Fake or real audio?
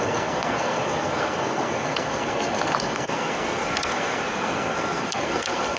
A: fake